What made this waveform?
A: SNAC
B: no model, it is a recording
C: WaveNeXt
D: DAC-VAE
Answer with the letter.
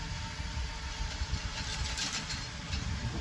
B